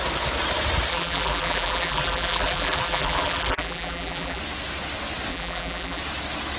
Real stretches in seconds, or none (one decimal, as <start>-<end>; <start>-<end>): 0.0-0.9; 4.4-5.3; 6.0-6.6